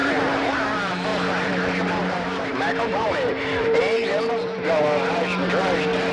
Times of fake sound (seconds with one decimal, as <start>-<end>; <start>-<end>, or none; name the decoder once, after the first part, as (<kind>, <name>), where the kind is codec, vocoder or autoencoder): 0.0-0.6 (vocoder, BigVGAN v2); 1.1-4.8